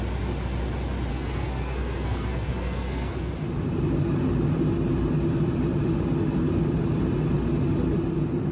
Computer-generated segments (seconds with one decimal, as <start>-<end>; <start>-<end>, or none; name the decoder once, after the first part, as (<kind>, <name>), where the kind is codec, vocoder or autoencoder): 1.1-3.3 (codec, SNAC)

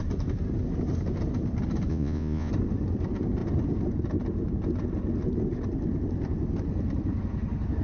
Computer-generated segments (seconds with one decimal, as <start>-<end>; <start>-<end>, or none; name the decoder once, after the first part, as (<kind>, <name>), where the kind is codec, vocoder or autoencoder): 1.9-2.5 (vocoder, Vocos)

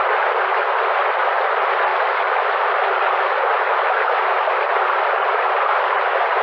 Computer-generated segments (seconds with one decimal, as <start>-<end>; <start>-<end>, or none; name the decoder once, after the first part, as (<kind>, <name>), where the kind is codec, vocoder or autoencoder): none

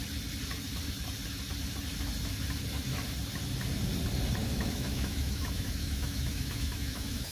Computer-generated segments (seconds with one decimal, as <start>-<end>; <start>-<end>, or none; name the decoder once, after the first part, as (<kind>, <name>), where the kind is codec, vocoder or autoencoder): 4.4-7.3 (autoencoder, DAC-VAE)

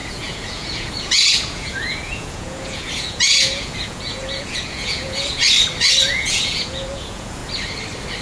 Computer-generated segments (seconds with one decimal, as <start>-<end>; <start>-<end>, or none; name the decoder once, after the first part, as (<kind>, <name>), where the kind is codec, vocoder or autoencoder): 0.0-5.4 (vocoder, Vocos); 6.0-7.4

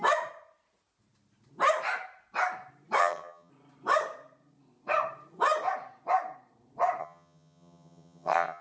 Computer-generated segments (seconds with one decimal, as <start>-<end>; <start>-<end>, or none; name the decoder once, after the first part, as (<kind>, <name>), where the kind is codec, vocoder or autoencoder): 3.0-3.5 (vocoder, HiFi-GAN); 7.0-8.6